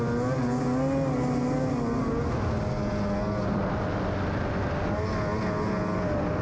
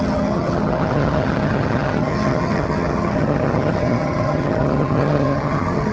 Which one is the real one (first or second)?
first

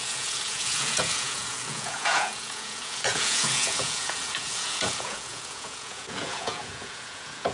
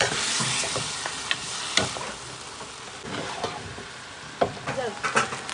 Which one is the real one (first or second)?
second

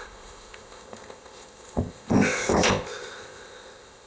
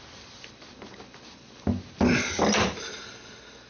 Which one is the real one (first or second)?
second